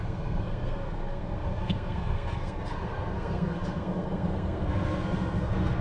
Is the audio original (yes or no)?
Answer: no